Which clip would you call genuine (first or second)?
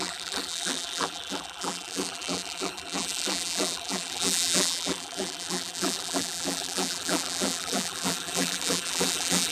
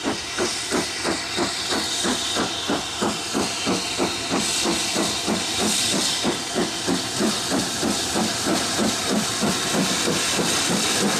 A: second